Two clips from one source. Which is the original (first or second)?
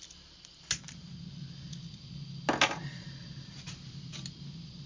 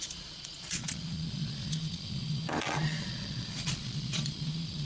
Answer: first